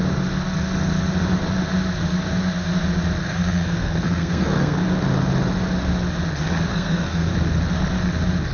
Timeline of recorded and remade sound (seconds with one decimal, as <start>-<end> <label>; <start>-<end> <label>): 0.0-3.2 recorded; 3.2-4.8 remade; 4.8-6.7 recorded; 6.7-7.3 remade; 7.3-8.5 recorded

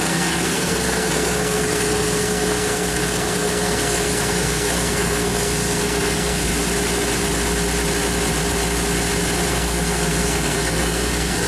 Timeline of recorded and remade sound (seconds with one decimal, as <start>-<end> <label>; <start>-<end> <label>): 0.0-6.5 remade; 6.5-9.5 recorded; 9.5-11.5 remade

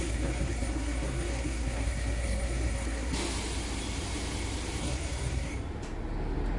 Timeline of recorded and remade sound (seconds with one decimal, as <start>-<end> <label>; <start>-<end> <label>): 0.0-3.1 remade; 3.1-4.8 recorded; 4.8-5.5 remade; 5.5-6.6 recorded

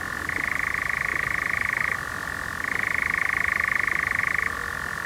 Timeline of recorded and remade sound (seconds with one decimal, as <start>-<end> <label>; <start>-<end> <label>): 0.0-5.1 recorded